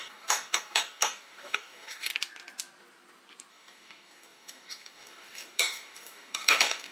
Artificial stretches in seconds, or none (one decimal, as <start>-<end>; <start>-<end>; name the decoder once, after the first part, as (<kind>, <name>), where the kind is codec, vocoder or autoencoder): 0.0-2.1 (codec, DAC); 3.5-6.9